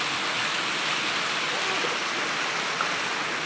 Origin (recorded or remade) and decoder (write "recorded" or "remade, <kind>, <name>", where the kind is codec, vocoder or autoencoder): recorded